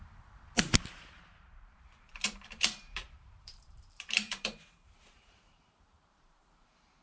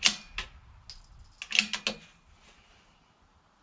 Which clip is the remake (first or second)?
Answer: first